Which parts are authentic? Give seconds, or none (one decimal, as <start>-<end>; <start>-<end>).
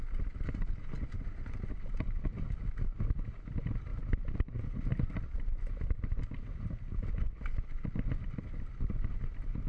0.0-9.7